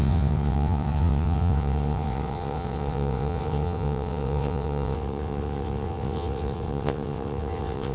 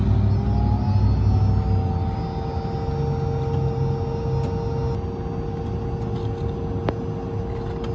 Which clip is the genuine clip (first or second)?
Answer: second